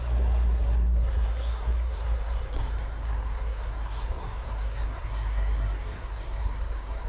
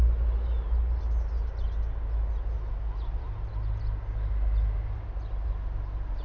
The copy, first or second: first